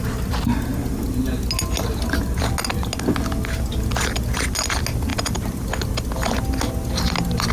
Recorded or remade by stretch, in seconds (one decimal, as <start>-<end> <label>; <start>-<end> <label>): 0.0-5.1 recorded; 5.1-5.7 remade; 5.7-7.5 recorded